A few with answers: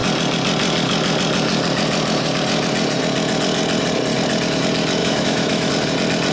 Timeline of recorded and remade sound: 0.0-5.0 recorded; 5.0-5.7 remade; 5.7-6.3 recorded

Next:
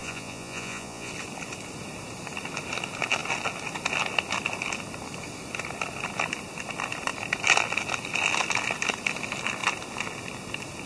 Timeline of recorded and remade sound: 0.0-1.1 remade; 1.1-10.9 recorded

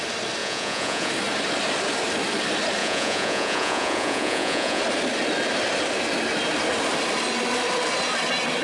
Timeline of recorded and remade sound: 0.0-0.4 recorded; 0.4-1.1 remade; 1.1-2.8 recorded; 2.8-4.8 remade; 4.8-8.6 recorded

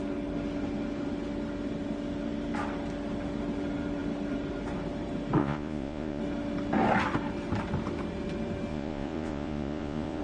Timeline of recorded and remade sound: 0.0-5.4 recorded; 5.4-6.2 remade; 6.2-8.7 recorded; 8.7-10.2 remade

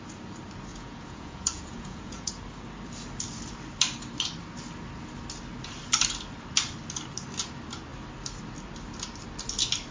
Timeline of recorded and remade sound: 0.0-0.7 recorded; 0.7-2.3 remade; 2.3-9.9 recorded

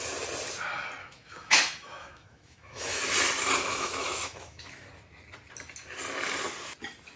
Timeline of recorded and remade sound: 0.0-1.0 recorded; 1.0-3.0 remade; 3.0-3.7 recorded; 3.7-4.9 remade; 4.9-7.2 recorded

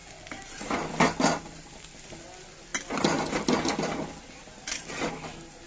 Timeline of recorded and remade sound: 0.0-5.7 recorded

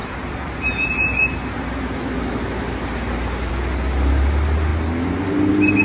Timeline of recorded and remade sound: 0.0-5.8 recorded